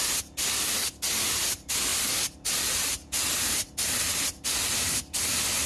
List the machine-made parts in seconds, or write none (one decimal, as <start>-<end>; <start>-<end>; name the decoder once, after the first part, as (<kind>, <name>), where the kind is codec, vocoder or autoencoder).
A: none